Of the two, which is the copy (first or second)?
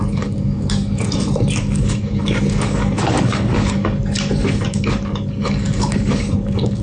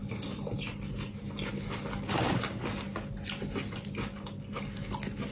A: first